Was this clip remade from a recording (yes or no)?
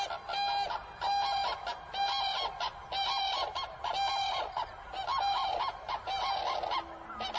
no